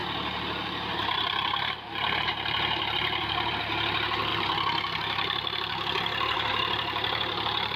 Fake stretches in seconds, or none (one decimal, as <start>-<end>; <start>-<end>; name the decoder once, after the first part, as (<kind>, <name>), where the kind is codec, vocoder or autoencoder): 0.0-3.6 (vocoder, BigVGAN v2); 4.3-7.8